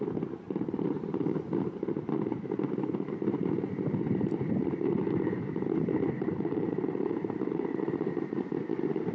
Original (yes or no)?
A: no